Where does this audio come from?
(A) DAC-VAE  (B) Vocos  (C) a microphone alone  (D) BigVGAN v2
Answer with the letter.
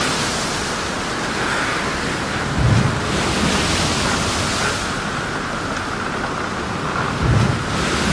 C